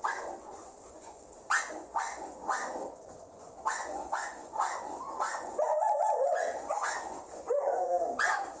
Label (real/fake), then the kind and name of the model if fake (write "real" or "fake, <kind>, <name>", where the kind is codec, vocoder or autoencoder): fake, vocoder, Vocos